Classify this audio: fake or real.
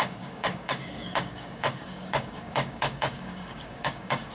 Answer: fake